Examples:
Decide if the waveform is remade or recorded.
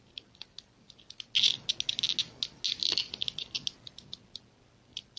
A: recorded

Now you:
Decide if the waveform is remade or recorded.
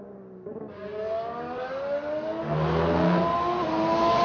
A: recorded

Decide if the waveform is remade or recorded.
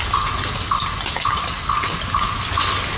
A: recorded